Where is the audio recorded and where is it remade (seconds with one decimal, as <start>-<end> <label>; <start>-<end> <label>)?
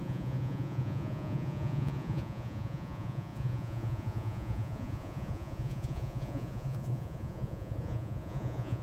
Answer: 0.0-8.8 remade